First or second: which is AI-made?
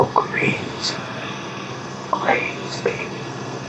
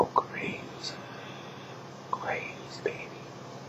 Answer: first